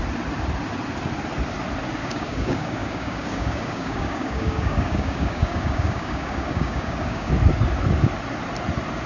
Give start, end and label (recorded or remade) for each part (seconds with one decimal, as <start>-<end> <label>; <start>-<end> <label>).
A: 0.0-2.0 recorded; 2.0-7.3 remade; 7.3-9.1 recorded